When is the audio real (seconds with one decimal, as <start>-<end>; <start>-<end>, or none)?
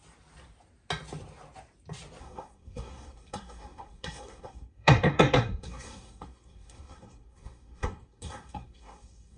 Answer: 0.0-2.2